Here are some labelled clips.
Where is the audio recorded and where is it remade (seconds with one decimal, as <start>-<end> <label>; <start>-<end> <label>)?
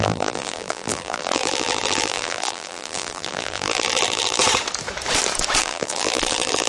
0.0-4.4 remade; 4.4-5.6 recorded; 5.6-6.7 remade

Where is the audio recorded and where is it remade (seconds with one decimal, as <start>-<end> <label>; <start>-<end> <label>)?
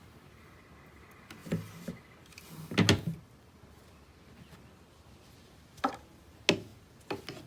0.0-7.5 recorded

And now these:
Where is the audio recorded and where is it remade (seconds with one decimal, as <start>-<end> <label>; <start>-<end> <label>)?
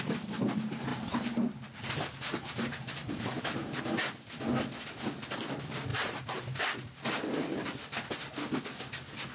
0.0-0.9 recorded; 0.9-3.8 remade; 3.8-5.9 recorded; 5.9-6.6 remade; 6.6-9.3 recorded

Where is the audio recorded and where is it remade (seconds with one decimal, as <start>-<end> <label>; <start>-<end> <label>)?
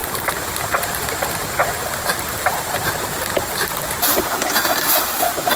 0.0-1.1 remade; 1.1-1.8 recorded; 1.8-5.6 remade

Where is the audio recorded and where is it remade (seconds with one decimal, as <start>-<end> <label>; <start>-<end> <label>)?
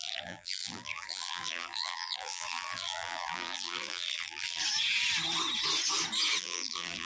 0.0-4.6 remade; 4.6-6.4 recorded; 6.4-7.1 remade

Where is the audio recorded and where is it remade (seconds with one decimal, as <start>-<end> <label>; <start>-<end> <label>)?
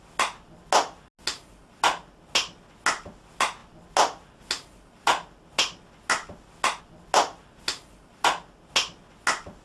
0.0-9.6 recorded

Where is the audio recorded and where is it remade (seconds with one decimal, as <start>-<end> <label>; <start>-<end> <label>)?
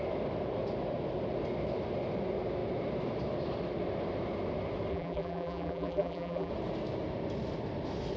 0.0-4.9 recorded; 4.9-6.5 remade; 6.5-8.2 recorded